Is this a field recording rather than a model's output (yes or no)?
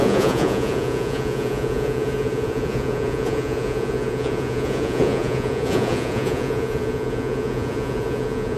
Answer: no